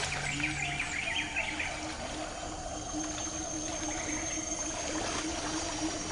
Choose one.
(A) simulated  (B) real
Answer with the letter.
B